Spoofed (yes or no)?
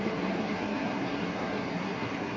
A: yes